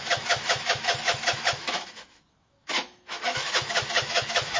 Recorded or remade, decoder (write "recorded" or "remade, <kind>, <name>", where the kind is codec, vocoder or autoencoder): remade, autoencoder, DAC-VAE